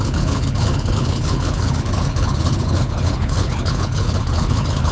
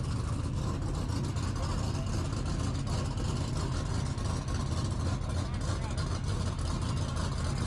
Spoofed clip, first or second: first